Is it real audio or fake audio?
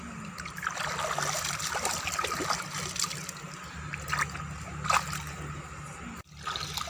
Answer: real